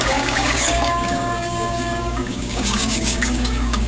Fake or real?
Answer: fake